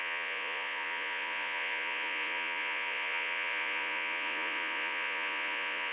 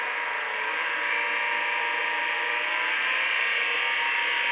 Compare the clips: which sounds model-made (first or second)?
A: first